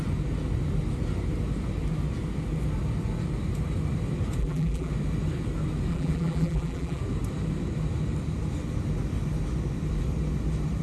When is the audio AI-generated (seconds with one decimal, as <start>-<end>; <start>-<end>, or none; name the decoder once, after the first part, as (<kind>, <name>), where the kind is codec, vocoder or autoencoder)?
4.4-4.9 (vocoder, BigVGAN v2); 5.9-7.0